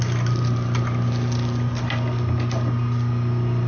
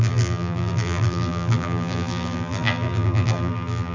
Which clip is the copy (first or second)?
second